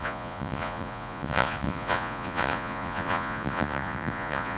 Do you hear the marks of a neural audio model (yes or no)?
yes